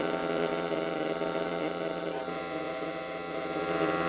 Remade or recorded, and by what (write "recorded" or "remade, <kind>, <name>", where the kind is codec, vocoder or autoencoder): remade, vocoder, HiFi-GAN